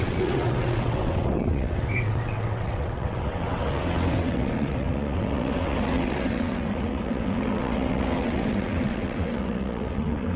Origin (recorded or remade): remade